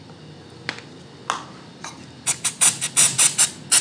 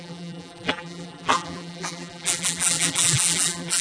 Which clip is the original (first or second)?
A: first